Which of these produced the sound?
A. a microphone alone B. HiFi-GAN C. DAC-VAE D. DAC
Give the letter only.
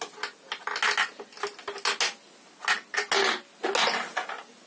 A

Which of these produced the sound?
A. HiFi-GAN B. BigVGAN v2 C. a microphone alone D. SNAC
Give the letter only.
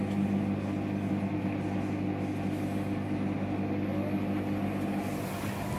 C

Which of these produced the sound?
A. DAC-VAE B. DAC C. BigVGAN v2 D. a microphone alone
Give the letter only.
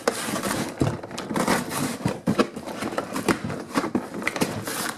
C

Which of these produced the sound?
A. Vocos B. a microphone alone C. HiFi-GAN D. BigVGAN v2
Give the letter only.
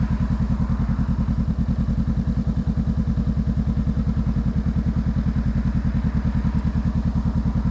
B